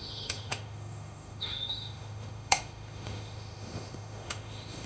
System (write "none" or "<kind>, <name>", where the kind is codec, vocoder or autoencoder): autoencoder, DAC-VAE